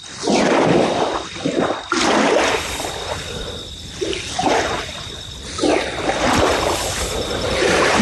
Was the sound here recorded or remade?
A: recorded